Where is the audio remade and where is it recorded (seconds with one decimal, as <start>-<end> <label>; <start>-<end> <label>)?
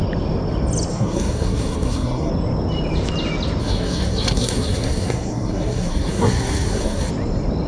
0.0-0.9 recorded; 0.9-2.3 remade; 2.3-3.6 recorded; 3.6-7.1 remade; 7.1-7.7 recorded